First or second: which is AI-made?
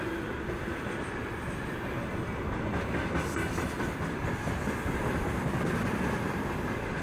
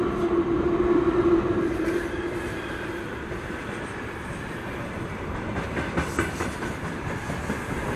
second